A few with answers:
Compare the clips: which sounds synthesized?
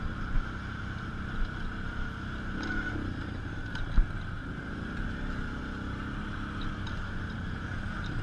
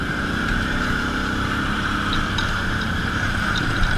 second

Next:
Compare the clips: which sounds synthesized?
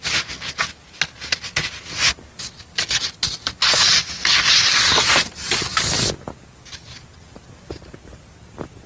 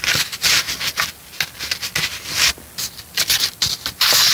second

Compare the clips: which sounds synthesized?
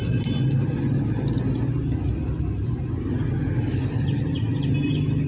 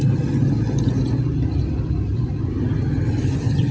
second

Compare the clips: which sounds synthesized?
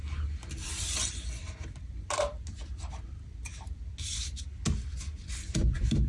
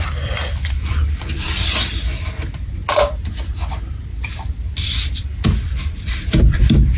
second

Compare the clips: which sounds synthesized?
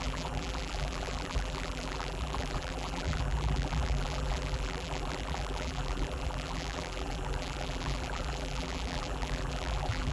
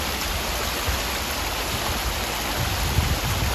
first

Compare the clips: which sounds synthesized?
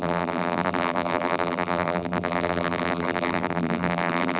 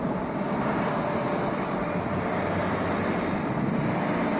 first